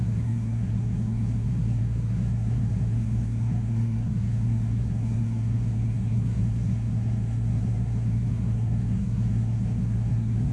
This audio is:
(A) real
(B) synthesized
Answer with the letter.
B